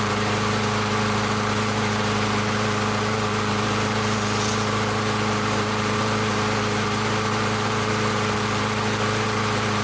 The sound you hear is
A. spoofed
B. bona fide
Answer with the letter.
A